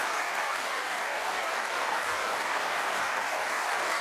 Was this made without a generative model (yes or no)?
no